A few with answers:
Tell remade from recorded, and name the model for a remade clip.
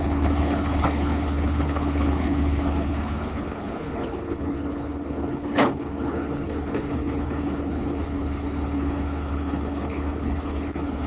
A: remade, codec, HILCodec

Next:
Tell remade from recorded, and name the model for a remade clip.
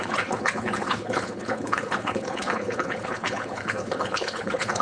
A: remade, codec, HILCodec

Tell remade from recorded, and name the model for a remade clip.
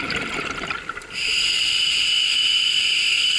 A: recorded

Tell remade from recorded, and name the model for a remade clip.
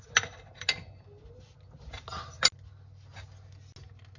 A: recorded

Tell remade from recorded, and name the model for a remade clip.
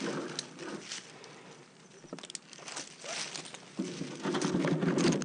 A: recorded